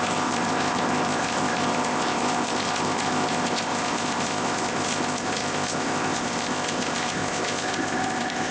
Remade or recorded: remade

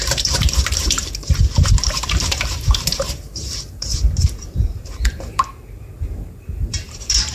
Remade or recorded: remade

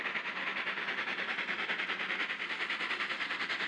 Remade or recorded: recorded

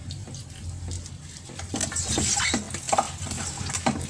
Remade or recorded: recorded